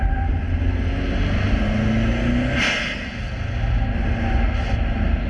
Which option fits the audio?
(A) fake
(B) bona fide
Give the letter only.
B